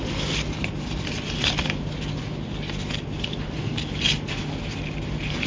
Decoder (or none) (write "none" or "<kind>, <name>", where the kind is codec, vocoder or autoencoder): none